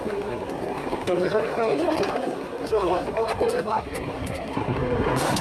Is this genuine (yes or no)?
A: no